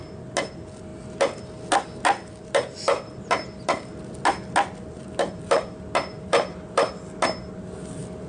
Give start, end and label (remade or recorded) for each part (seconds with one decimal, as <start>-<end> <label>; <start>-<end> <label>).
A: 0.0-8.3 recorded